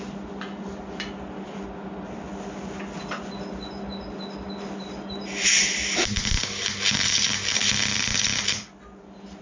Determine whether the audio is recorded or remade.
recorded